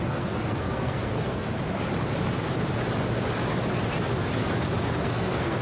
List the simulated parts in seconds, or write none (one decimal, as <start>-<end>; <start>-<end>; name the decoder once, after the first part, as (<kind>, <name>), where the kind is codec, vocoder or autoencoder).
0.0-1.6 (codec, SNAC); 5.0-5.6